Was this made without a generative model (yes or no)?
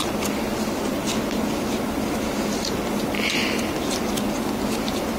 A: yes